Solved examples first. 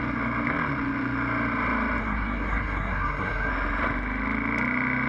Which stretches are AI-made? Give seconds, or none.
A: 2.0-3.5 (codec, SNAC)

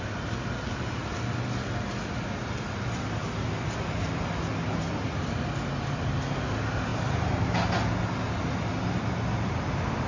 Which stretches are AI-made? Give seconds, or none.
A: none

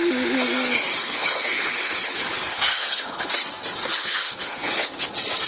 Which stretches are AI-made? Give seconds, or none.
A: 1.0-3.3 (codec, HILCodec); 3.8-5.1